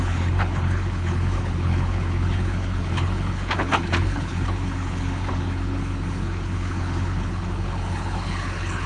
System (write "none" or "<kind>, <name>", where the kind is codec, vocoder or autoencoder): codec, HILCodec